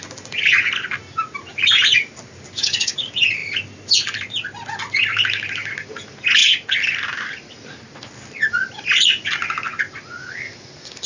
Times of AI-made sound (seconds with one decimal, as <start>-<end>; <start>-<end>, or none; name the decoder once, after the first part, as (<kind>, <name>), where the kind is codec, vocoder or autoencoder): 1.5-2.5 (vocoder, BigVGAN v2)

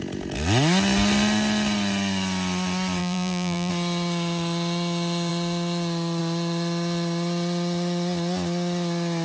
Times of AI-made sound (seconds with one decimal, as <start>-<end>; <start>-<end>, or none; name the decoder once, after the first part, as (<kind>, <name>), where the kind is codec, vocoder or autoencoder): 3.0-3.7 (vocoder, BigVGAN v2)

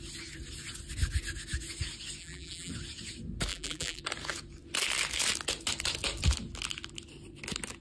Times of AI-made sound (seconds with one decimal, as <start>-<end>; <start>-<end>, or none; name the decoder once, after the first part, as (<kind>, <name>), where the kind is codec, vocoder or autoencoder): 2.2-2.7 (vocoder, BigVGAN v2); 3.5-4.0

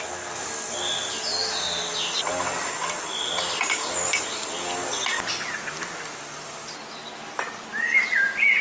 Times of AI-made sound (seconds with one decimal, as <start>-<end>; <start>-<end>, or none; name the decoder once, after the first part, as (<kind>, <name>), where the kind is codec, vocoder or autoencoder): none

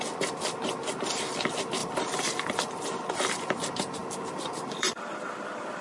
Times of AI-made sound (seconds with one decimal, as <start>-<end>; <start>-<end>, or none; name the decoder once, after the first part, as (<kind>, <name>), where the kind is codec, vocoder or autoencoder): 1.8-3.1 (vocoder, BigVGAN v2); 4.0-5.8

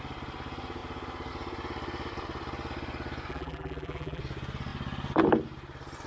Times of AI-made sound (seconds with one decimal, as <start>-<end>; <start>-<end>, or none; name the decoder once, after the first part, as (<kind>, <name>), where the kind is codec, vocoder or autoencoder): 3.3-4.2 (vocoder, BigVGAN v2)

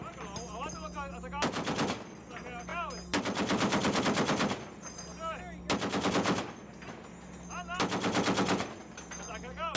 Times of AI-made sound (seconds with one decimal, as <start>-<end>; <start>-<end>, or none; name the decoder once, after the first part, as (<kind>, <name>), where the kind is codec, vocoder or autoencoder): none

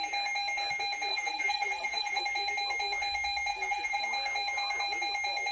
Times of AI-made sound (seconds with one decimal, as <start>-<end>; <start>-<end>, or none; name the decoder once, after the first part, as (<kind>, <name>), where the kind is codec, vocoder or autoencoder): 1.1-2.2 (vocoder, BigVGAN v2); 3.5-4.0